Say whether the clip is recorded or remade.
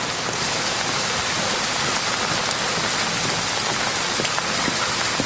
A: recorded